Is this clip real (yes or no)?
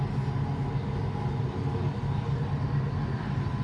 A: yes